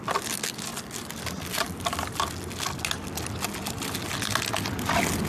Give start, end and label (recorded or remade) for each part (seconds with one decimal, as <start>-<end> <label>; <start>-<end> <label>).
0.0-5.3 recorded